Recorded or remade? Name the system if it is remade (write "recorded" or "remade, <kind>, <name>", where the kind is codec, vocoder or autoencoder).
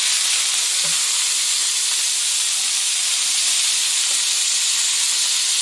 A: recorded